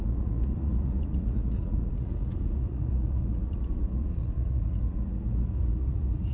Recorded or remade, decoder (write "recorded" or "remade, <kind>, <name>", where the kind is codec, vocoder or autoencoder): remade, vocoder, Vocos